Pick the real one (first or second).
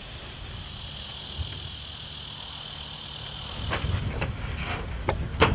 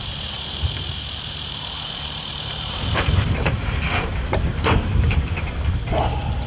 first